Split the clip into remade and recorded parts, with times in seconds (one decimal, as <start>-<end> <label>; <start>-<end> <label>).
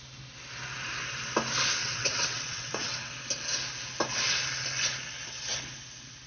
0.0-1.8 recorded; 1.8-3.1 remade; 3.1-6.3 recorded